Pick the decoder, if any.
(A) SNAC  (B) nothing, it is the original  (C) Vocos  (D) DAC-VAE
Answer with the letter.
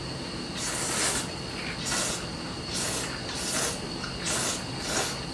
B